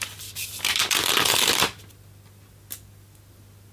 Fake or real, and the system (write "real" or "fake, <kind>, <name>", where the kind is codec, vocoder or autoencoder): real